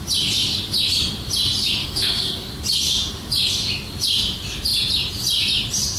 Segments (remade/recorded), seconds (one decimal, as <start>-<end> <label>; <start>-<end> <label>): 0.0-1.8 recorded; 1.8-2.5 remade; 2.5-6.0 recorded